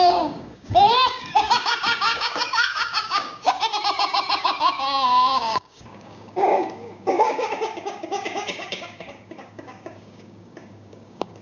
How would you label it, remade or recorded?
remade